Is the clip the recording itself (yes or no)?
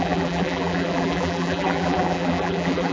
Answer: no